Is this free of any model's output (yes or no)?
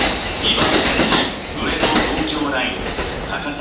yes